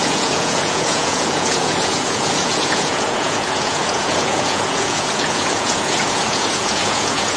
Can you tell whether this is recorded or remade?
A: remade